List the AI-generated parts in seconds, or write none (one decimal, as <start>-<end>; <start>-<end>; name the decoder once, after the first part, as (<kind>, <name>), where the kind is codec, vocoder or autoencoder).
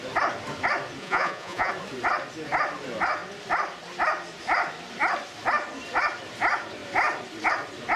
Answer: 1.0-1.7 (vocoder, Vocos)